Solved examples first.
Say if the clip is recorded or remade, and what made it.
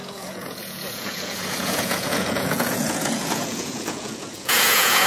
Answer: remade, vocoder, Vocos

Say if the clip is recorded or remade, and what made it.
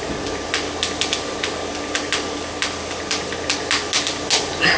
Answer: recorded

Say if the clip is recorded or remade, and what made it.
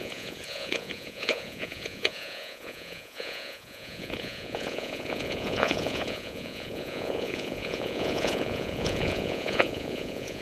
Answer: remade, vocoder, Vocos